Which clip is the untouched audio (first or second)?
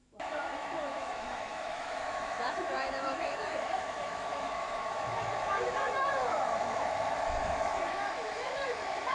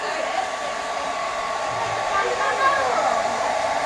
second